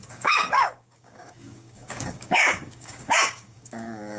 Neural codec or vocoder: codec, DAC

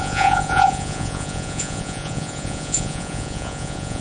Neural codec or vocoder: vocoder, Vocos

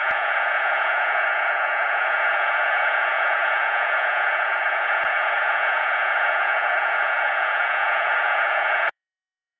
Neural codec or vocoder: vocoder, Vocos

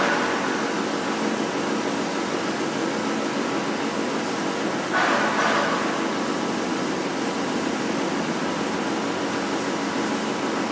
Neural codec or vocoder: none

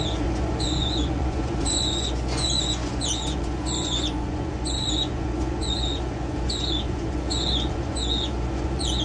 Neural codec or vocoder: vocoder, Vocos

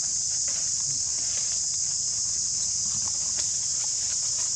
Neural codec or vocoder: none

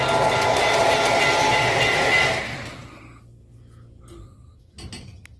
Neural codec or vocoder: none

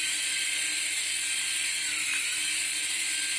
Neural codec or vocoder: vocoder, BigVGAN v2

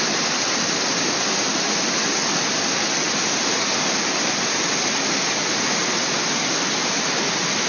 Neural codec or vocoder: none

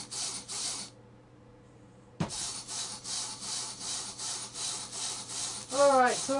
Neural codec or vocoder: vocoder, BigVGAN v2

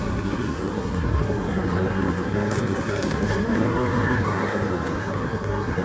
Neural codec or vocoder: codec, SNAC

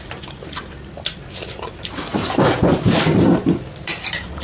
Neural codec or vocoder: none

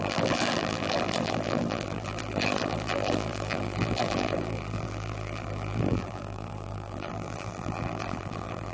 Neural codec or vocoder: vocoder, BigVGAN v2